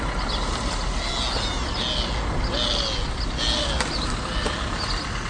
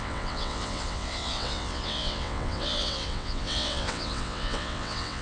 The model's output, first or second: second